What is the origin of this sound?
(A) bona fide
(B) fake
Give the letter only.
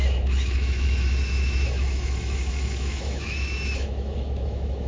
B